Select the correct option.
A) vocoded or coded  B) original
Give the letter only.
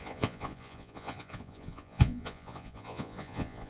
A